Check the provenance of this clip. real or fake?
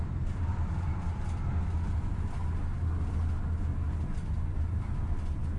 real